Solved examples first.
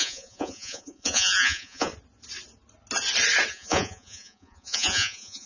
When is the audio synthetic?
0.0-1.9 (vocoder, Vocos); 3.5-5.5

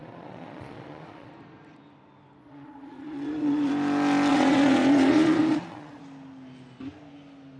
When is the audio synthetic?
0.0-1.3 (vocoder, Vocos); 2.4-3.7; 4.3-6.0

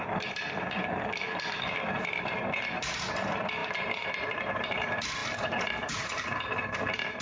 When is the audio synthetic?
0.0-7.2 (vocoder, BigVGAN v2)

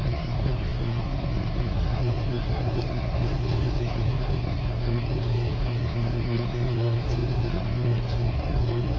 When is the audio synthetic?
0.0-9.0 (codec, SNAC)

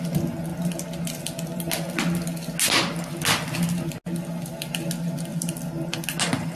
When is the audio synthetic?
none

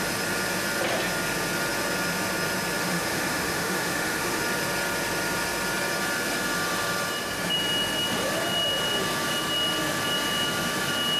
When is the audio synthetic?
2.8-4.4 (autoencoder, DAC-VAE)

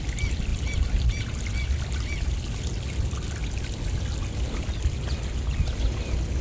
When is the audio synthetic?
none